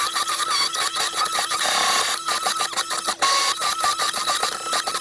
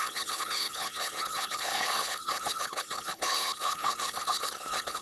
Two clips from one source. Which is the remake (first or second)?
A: second